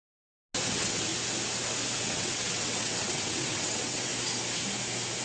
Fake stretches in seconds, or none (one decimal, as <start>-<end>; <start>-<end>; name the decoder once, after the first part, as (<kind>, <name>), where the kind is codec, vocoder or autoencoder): 0.7-1.1 (vocoder, WaveNeXt); 2.0-4.1